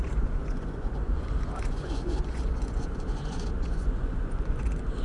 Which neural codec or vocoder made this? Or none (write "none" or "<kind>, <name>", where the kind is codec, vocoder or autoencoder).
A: vocoder, Vocos